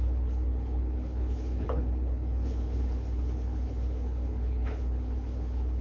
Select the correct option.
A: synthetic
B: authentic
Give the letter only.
A